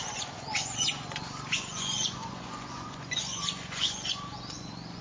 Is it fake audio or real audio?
fake